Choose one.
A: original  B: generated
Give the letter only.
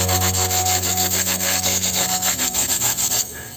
B